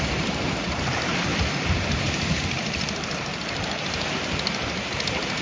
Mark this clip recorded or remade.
remade